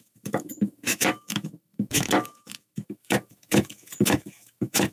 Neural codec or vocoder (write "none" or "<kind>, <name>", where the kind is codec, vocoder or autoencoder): autoencoder, DAC-VAE